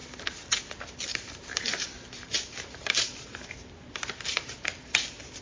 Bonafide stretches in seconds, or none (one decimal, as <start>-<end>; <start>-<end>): 0.0-1.1; 3.7-4.3; 5.0-5.4